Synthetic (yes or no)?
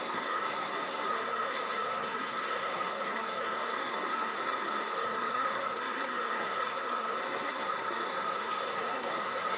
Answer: yes